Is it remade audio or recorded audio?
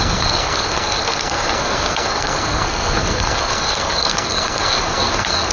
remade